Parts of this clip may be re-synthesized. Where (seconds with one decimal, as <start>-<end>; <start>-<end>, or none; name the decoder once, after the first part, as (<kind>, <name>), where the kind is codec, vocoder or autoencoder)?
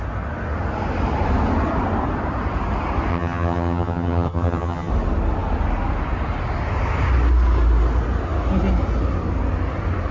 3.1-4.9 (vocoder, HiFi-GAN)